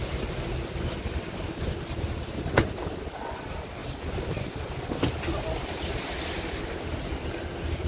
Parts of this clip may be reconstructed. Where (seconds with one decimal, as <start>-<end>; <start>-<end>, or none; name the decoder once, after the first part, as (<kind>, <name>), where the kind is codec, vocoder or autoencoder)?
none

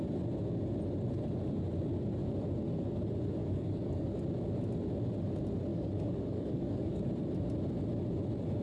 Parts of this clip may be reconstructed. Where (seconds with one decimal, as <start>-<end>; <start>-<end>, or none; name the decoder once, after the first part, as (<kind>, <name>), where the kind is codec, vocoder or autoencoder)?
3.4-4.2 (codec, DAC); 5.7-7.1

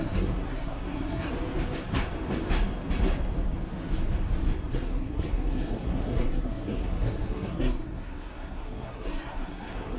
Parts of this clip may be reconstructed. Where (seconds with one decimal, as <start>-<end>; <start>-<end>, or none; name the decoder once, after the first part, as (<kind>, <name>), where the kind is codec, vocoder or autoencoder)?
0.0-1.3 (codec, SNAC); 4.7-10.0

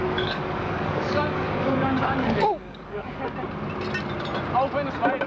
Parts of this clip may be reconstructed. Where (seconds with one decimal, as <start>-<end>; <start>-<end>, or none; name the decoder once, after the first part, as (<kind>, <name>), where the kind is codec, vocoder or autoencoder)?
0.0-3.2 (codec, DAC)

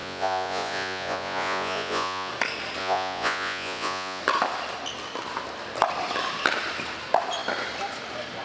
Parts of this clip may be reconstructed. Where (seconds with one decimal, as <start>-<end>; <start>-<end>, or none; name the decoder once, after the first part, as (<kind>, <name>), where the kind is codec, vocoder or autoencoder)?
0.0-2.3 (vocoder, Vocos); 2.8-4.2